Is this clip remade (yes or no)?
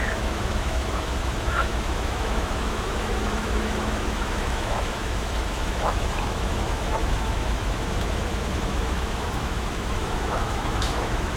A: yes